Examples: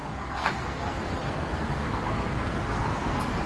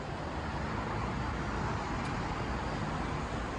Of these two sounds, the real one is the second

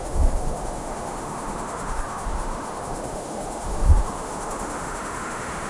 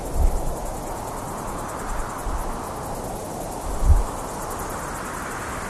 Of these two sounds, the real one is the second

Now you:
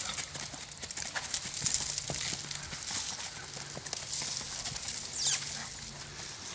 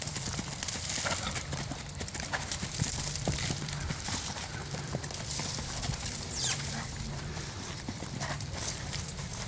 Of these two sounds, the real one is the first